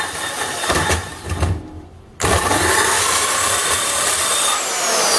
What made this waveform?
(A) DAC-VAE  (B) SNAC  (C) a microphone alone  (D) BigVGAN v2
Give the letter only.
D